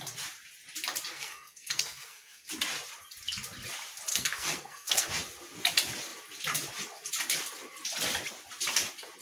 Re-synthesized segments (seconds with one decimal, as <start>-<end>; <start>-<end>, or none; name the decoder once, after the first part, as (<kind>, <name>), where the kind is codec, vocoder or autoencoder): 1.1-2.5 (codec, SNAC); 4.1-5.1